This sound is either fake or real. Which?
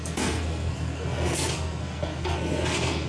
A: fake